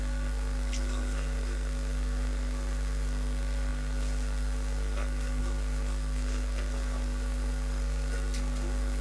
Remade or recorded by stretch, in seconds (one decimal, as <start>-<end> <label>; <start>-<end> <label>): 0.0-9.0 remade